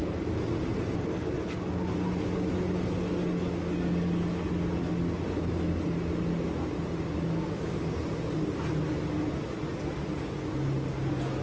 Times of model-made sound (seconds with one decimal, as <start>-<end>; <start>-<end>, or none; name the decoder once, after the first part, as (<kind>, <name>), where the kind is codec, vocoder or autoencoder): none